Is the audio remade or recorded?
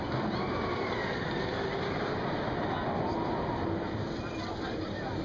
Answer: recorded